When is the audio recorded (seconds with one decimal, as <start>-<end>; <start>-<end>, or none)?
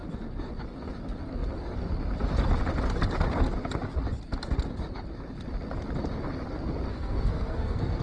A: 0.0-6.9